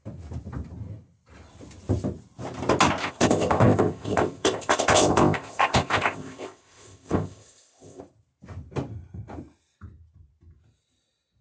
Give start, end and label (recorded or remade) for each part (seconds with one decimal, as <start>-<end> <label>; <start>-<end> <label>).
0.0-3.0 recorded; 3.0-8.0 remade; 8.0-11.4 recorded